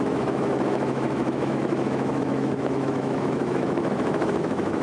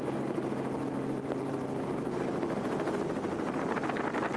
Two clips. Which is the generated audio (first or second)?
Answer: first